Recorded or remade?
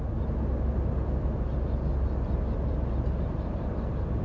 recorded